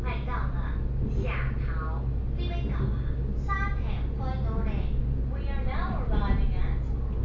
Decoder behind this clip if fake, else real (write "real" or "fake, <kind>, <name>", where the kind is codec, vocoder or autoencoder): real